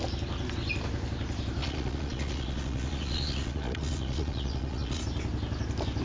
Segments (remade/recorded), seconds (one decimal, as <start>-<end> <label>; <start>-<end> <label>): 0.0-1.6 recorded; 1.6-5.0 remade; 5.0-6.0 recorded